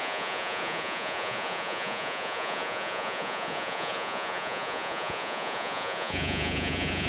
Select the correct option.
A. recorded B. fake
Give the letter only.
B